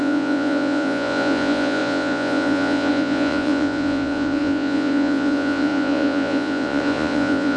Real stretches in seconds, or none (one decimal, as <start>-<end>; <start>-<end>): none